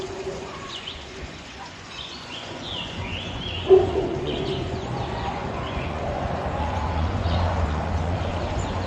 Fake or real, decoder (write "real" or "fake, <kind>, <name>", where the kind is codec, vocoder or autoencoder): fake, vocoder, Vocos